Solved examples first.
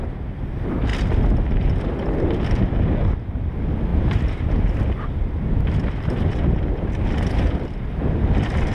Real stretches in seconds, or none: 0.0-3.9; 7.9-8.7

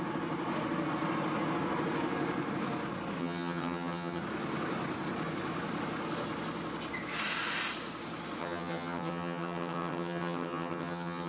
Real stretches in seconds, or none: 0.0-3.2; 4.2-8.4

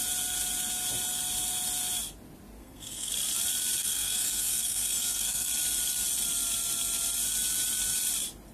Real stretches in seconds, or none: 0.0-2.6; 3.1-3.8; 5.5-8.5

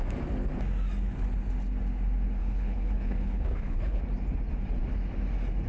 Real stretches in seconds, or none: 0.0-2.4; 4.0-5.7

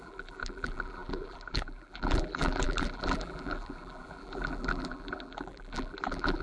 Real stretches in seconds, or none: none

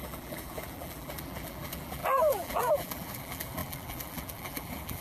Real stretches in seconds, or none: none

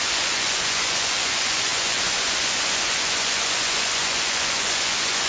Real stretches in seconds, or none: none

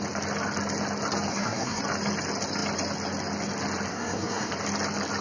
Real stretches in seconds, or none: 0.0-1.3; 1.8-3.9; 4.5-5.2